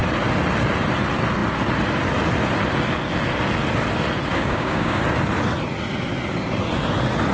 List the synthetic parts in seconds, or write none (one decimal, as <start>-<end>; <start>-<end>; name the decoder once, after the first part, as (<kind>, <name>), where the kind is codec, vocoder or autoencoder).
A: 4.3-5.0 (codec, DAC)